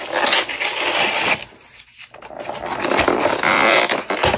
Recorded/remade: recorded